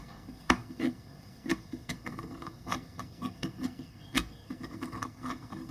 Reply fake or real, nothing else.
fake